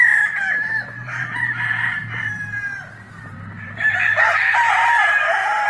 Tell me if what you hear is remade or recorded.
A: remade